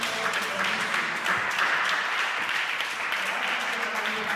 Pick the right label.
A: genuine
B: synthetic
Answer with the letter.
A